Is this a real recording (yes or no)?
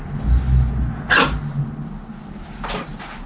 yes